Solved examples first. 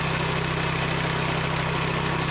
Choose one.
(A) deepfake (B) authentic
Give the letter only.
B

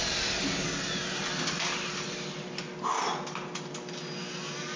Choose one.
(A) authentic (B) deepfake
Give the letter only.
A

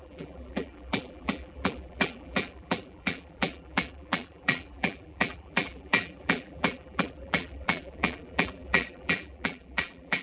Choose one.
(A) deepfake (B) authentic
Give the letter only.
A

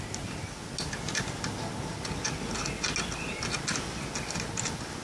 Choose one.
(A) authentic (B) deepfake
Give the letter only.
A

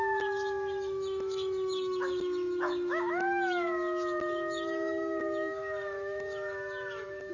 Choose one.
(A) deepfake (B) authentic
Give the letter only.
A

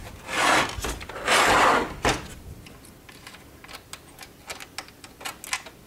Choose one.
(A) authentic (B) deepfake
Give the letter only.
A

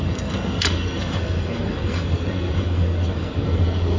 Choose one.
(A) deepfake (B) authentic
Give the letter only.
A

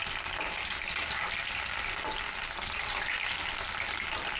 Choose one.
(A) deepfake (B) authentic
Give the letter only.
B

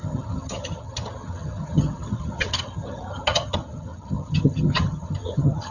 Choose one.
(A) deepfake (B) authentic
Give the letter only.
A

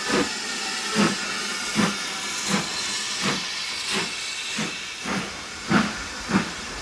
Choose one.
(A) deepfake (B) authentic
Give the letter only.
B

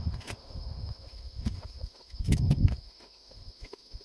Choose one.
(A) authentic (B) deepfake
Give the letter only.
B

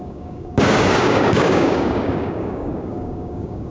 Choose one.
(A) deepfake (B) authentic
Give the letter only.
A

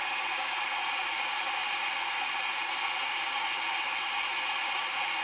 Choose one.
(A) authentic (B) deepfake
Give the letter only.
A